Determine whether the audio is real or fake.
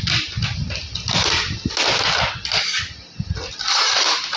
real